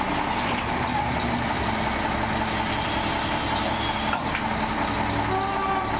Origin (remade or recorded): recorded